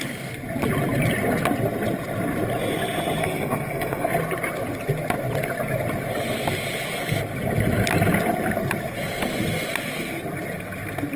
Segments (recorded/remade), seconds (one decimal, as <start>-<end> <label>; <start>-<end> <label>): 0.0-3.2 recorded; 3.2-4.1 remade; 4.1-11.2 recorded